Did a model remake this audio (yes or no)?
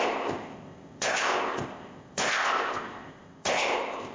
yes